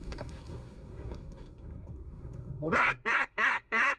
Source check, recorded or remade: remade